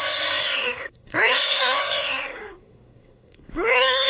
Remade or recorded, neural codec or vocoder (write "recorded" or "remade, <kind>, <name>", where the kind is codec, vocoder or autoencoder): remade, codec, SNAC